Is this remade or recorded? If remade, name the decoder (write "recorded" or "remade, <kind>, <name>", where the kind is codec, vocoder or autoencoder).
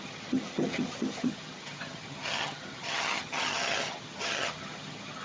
remade, vocoder, HiFi-GAN